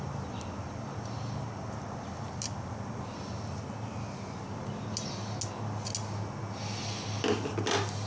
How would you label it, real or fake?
real